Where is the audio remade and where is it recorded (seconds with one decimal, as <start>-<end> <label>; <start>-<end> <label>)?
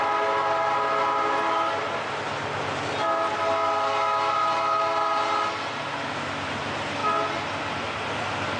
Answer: 0.0-8.6 recorded